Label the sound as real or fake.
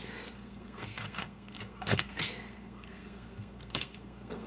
fake